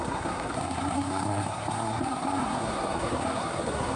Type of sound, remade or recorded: remade